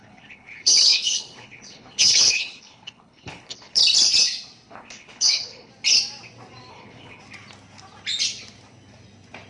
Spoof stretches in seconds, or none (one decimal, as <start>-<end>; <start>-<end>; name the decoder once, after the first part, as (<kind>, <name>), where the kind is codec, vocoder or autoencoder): 0.0-3.8 (codec, HILCodec); 4.7-5.7; 6.7-7.2